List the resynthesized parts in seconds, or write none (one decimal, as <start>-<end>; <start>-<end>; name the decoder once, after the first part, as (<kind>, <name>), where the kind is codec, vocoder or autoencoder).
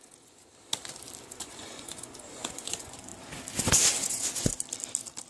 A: 0.0-0.5 (vocoder, Vocos); 1.2-3.1; 4.1-4.5